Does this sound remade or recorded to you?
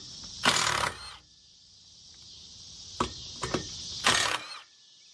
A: recorded